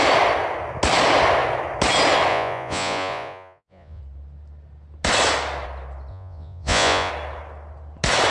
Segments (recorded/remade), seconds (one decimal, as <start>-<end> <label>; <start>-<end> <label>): 0.0-2.3 recorded; 2.3-4.0 remade; 4.0-6.1 recorded; 6.1-7.1 remade; 7.1-8.3 recorded